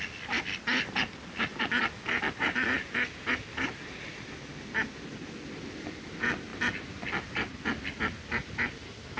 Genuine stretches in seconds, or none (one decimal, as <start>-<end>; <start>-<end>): 0.0-9.2